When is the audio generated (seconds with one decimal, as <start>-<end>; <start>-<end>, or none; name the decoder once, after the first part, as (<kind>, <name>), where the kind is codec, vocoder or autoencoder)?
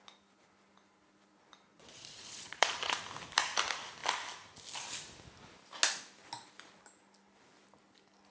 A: 1.7-3.0 (vocoder, Vocos)